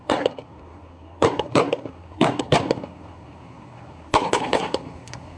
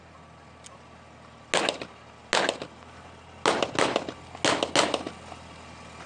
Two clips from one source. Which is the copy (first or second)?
first